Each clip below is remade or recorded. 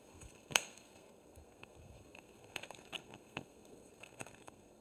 remade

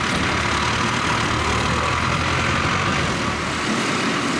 recorded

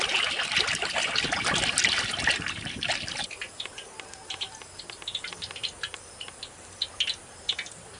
recorded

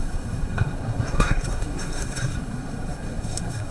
remade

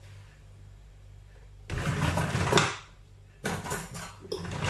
recorded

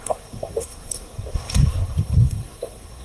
remade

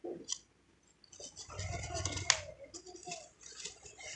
recorded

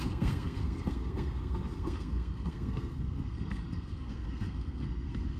remade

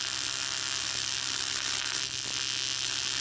recorded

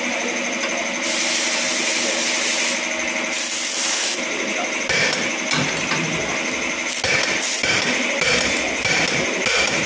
recorded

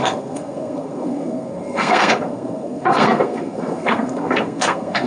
remade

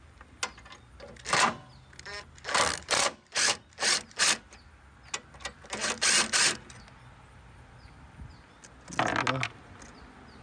recorded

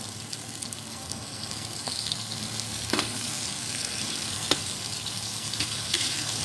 remade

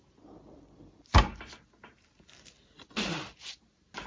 recorded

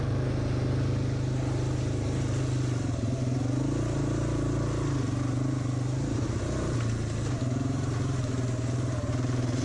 recorded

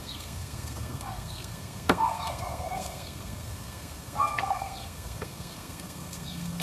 remade